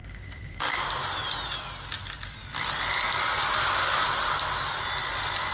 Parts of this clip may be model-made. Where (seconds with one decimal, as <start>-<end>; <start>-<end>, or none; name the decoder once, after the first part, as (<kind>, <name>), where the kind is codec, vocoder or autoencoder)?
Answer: 0.0-0.6 (codec, DAC)